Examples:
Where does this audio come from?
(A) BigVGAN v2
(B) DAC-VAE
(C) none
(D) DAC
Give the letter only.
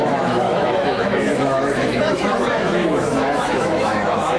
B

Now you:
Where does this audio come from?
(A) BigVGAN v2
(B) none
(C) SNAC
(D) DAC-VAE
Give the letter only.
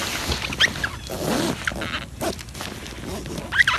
B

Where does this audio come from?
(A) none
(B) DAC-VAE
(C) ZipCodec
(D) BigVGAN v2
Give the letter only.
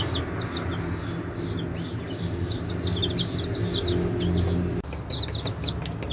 A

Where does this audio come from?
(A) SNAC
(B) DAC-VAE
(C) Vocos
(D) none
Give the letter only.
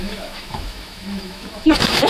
B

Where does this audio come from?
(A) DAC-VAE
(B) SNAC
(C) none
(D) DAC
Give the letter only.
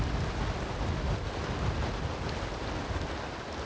C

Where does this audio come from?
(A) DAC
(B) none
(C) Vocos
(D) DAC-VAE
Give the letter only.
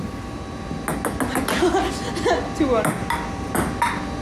B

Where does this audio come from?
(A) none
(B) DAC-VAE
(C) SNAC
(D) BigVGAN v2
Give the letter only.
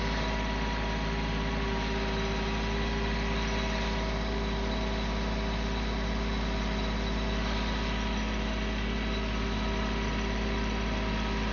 A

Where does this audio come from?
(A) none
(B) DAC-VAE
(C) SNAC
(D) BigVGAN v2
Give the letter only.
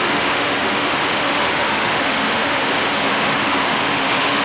B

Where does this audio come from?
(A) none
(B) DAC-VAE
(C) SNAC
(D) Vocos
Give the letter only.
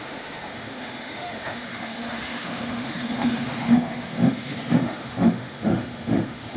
B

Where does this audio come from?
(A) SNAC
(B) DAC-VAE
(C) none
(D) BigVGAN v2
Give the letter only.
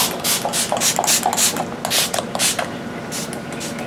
C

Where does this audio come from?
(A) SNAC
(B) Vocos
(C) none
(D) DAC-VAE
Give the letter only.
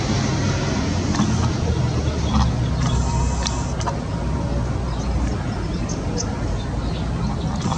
C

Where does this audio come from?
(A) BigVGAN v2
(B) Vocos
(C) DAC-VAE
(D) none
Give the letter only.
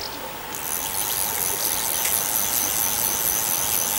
D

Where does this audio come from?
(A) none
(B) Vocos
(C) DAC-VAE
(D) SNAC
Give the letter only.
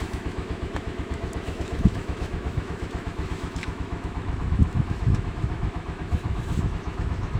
C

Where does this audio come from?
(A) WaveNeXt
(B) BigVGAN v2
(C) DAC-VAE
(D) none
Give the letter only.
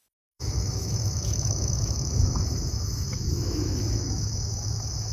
C